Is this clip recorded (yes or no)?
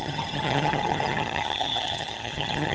no